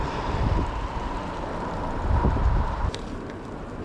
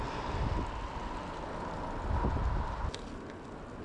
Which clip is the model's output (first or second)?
first